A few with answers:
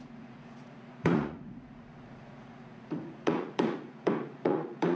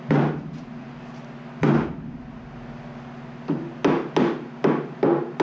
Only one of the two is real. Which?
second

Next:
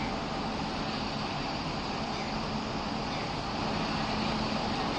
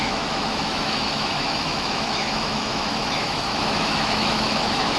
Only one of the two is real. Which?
first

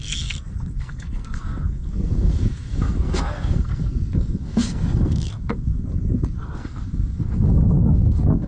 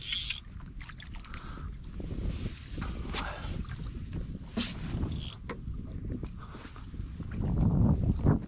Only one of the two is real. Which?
second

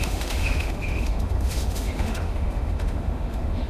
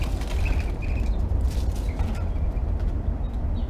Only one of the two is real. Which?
second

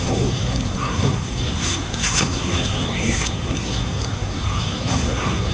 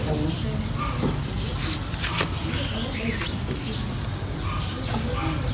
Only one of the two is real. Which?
second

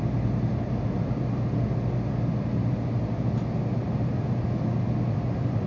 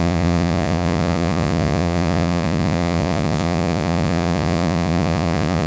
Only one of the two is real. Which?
first